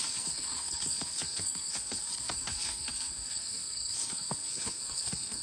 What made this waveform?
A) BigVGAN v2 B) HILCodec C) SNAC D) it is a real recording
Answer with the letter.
C